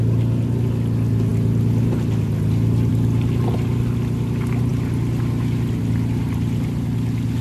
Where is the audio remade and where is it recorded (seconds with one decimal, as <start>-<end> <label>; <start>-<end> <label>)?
0.0-7.4 recorded